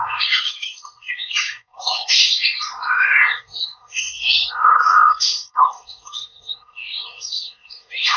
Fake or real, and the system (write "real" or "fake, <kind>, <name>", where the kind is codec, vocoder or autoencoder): fake, codec, SNAC